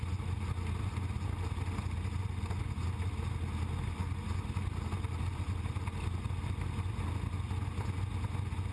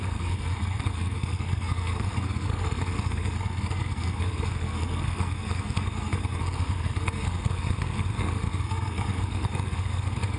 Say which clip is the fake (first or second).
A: second